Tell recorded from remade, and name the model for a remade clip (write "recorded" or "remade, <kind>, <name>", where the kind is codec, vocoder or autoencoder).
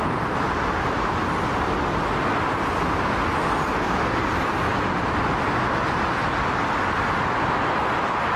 recorded